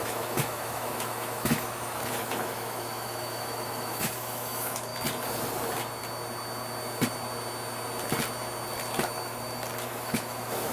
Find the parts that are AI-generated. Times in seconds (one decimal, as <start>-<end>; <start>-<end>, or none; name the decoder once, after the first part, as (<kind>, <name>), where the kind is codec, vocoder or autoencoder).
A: 0.0-4.9 (autoencoder, DAC-VAE); 9.9-10.7